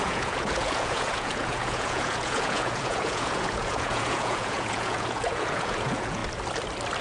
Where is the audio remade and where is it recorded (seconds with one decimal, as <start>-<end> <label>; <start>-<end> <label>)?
0.0-6.2 remade; 6.2-7.0 recorded